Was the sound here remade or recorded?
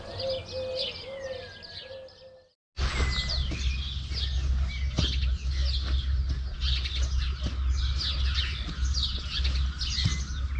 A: recorded